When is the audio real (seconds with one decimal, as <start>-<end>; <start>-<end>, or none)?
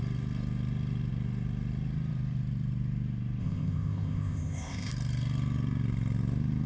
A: 0.0-3.4; 4.9-6.7